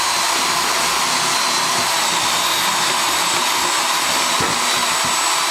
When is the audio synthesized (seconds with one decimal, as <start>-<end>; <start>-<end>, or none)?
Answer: none